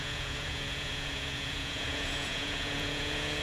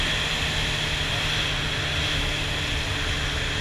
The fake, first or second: first